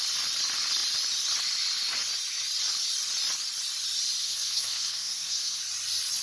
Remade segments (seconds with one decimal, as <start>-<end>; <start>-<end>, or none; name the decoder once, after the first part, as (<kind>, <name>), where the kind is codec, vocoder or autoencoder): 4.2-5.6 (codec, SNAC)